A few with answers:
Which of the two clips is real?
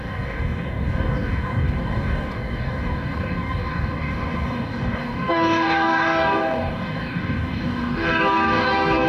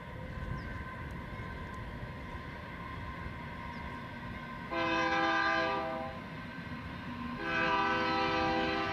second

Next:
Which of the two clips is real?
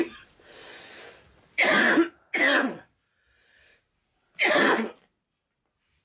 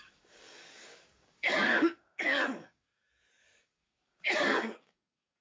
first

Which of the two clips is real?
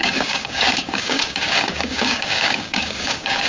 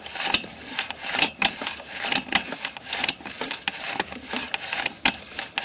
second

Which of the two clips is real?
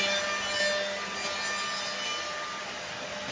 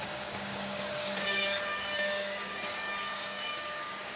first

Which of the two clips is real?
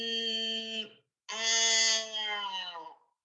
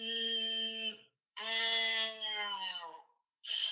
first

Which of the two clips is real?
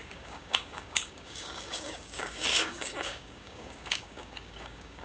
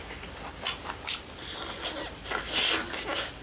second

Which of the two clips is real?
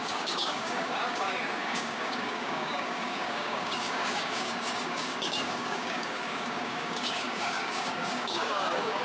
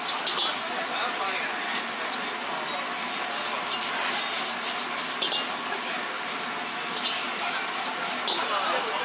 second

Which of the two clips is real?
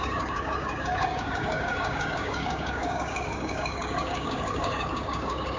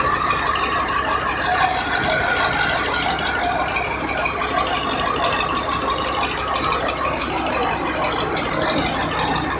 second